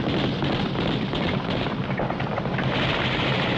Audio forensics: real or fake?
fake